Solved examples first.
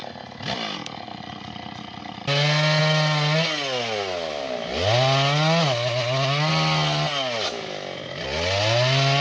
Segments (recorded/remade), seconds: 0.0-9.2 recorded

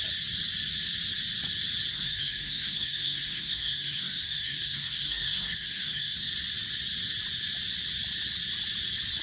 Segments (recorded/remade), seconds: 0.0-1.9 recorded; 1.9-6.3 remade; 6.3-9.2 recorded